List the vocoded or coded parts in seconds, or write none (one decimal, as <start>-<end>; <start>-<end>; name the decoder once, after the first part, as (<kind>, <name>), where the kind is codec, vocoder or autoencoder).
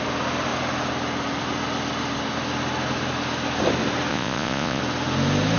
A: 4.1-4.8 (vocoder, Vocos)